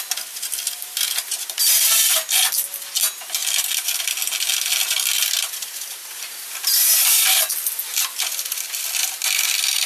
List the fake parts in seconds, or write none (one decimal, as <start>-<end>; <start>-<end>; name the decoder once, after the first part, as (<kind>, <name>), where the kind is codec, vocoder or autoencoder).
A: none